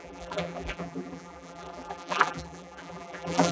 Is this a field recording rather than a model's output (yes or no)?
no